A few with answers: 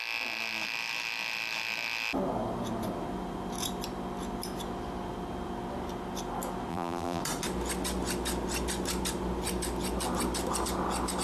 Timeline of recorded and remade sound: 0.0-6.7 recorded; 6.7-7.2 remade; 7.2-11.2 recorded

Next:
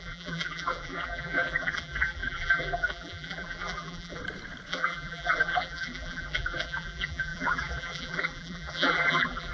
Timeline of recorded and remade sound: 0.0-4.2 remade; 4.2-4.7 recorded; 4.7-9.5 remade

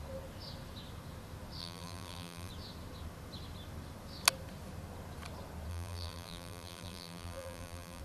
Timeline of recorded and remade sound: 0.0-1.6 recorded; 1.6-2.5 remade; 2.5-5.7 recorded; 5.7-8.0 remade

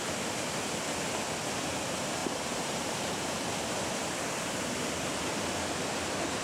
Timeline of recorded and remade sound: 0.0-2.2 recorded; 2.2-3.4 remade; 3.4-6.4 recorded

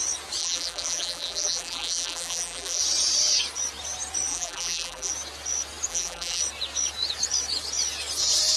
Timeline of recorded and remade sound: 0.0-0.4 recorded; 0.4-2.8 remade; 2.8-4.3 recorded; 4.3-5.1 remade; 5.1-5.9 recorded; 5.9-6.4 remade; 6.4-8.6 recorded

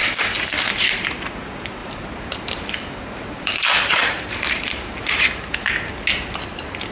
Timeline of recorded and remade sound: 0.0-1.8 recorded; 1.8-5.9 remade; 5.9-6.9 recorded

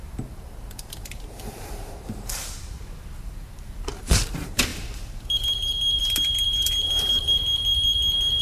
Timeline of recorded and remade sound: 0.0-8.4 remade